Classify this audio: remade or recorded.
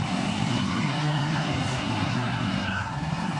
remade